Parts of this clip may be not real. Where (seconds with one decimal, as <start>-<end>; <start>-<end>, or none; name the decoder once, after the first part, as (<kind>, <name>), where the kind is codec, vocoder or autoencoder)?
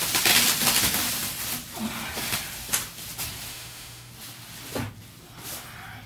3.5-4.1 (autoencoder, DAC-VAE)